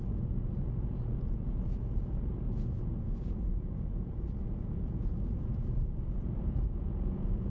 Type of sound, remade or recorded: remade